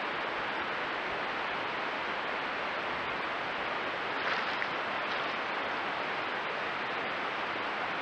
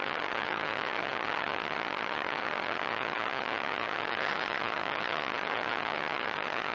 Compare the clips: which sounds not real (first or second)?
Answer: second